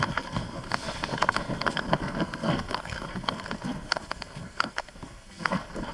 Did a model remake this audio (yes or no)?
yes